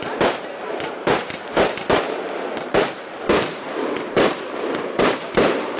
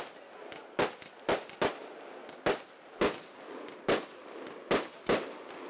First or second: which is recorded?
second